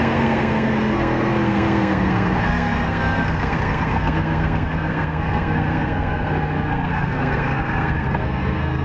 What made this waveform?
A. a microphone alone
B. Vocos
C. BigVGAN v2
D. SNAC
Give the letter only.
D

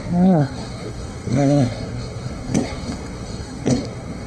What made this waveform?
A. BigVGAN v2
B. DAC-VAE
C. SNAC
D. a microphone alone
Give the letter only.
C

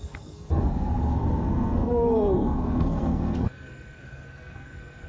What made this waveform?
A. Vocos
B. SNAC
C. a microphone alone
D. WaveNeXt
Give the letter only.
B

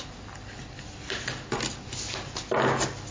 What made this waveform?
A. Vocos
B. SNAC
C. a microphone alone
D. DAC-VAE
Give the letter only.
C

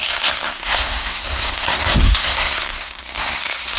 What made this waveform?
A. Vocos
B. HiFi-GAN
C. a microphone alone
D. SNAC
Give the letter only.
D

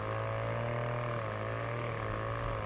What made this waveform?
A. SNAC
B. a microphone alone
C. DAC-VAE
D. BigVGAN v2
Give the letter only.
B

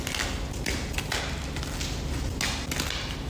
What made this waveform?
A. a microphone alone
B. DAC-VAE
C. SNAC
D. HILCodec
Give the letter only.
A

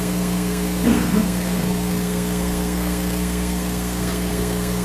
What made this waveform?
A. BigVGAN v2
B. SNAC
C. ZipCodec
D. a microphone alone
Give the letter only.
B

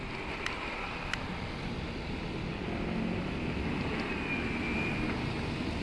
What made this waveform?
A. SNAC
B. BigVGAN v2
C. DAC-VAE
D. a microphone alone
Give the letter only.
D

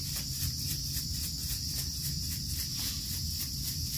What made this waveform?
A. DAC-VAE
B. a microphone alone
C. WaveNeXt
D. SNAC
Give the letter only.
B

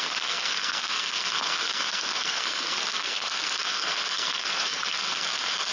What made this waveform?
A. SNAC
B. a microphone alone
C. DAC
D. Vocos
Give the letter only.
A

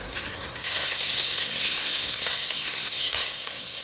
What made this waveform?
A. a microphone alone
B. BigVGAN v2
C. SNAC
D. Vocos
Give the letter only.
C